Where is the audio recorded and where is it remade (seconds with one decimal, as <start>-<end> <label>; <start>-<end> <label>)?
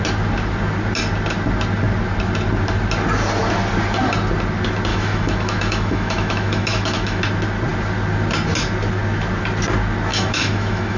0.0-4.9 recorded; 4.9-7.2 remade; 7.2-10.1 recorded; 10.1-11.0 remade